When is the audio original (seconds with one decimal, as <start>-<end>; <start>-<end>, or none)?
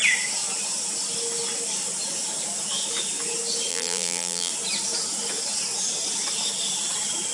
0.0-3.7; 4.5-7.3